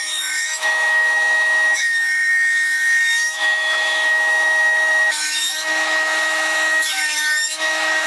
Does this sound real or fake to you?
fake